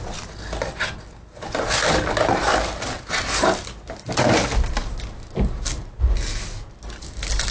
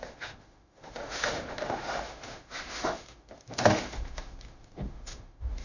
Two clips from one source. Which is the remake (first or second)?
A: second